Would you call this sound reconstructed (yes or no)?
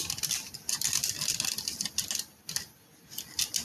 no